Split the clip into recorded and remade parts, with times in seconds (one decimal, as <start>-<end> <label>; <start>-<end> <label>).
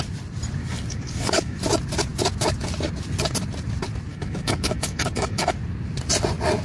0.0-0.6 recorded; 0.6-1.6 remade; 1.6-4.1 recorded; 4.1-5.6 remade; 5.6-6.6 recorded